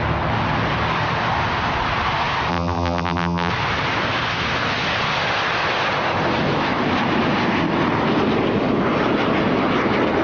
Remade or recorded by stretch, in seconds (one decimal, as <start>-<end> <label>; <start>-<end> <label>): 0.0-2.5 recorded; 2.5-3.5 remade; 3.5-10.2 recorded